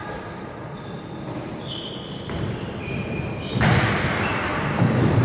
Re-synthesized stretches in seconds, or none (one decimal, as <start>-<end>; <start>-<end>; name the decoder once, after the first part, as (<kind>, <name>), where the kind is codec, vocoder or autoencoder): 0.0-0.6 (vocoder, BigVGAN v2)